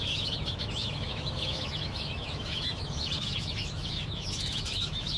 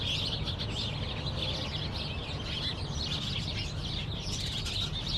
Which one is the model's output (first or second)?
first